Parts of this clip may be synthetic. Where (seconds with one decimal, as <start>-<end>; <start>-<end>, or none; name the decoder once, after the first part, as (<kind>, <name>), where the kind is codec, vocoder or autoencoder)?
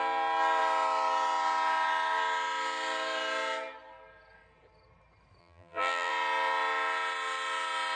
5.4-6.1 (vocoder, BigVGAN v2)